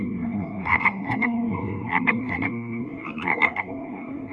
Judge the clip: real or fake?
fake